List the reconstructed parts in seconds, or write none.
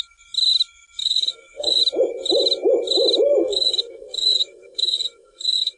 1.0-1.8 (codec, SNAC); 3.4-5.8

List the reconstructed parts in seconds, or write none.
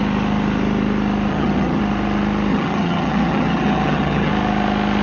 1.3-1.8 (vocoder, HiFi-GAN); 2.5-4.3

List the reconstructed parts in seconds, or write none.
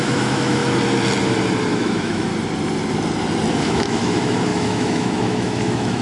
0.0-0.6 (autoencoder, DAC-VAE); 1.7-2.3; 3.5-6.0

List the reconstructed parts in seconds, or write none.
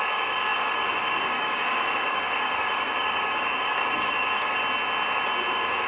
0.0-4.6 (codec, DAC); 5.5-5.9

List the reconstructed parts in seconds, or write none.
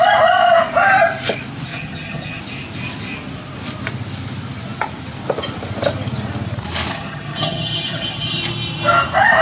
1.7-2.4 (vocoder, HiFi-GAN); 6.9-8.4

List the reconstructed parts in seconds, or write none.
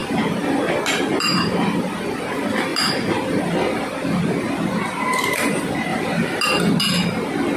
none